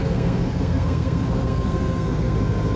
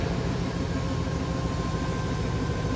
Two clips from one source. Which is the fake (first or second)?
first